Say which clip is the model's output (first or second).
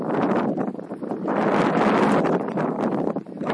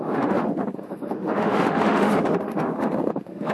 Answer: second